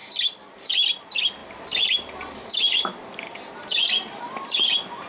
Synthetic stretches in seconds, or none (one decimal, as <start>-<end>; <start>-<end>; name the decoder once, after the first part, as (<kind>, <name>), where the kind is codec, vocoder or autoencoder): 0.0-0.9 (vocoder, BigVGAN v2); 1.4-4.5